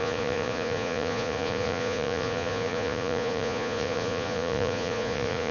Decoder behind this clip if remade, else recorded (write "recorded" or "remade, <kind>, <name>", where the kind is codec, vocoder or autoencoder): remade, vocoder, Vocos